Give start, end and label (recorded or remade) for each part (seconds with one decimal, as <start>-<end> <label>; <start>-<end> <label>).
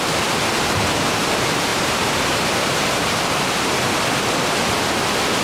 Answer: 0.0-1.7 recorded; 1.7-3.9 remade; 3.9-5.4 recorded